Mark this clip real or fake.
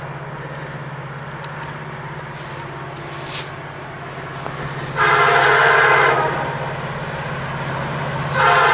real